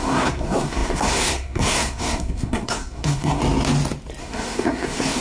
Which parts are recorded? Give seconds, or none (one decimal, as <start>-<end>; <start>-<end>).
3.4-4.2